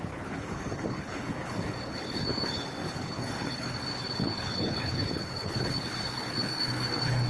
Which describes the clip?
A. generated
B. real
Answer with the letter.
A